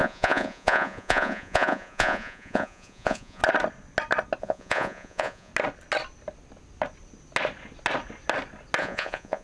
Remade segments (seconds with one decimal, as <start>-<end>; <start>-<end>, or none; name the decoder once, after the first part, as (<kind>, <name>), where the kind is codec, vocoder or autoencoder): 0.0-3.4 (vocoder, Vocos); 4.4-5.5; 8.8-9.4